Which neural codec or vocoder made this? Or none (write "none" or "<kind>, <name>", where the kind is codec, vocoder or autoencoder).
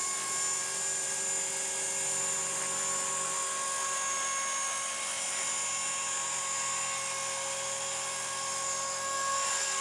none